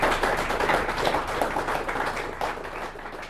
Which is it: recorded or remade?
recorded